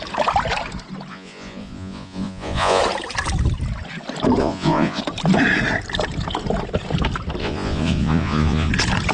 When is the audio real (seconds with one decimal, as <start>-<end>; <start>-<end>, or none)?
0.0-1.1; 2.8-4.4; 5.0-7.4; 8.7-9.1

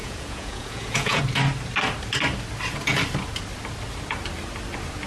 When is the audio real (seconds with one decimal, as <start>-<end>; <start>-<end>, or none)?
1.2-5.1

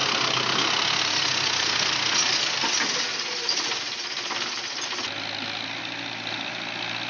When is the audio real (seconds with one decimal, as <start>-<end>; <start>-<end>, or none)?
0.0-7.1

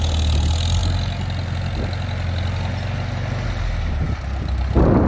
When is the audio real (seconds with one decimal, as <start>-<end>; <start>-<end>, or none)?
0.0-5.1

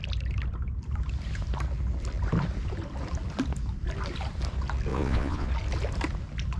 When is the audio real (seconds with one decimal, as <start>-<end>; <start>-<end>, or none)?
0.0-4.9; 5.5-6.6